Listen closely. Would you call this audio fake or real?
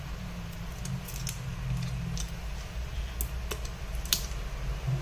real